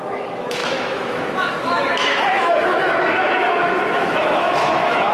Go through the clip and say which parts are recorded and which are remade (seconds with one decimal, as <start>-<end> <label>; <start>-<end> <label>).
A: 0.0-5.1 remade